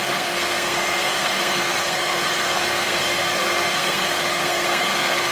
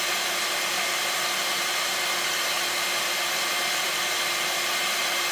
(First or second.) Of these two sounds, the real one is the second